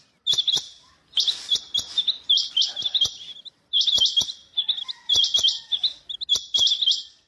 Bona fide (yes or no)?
yes